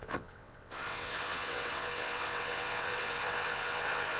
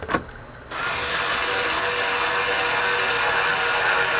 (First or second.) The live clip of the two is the second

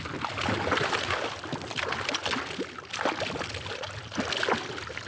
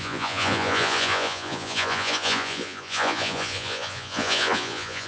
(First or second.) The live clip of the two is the first